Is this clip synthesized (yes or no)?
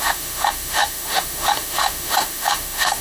yes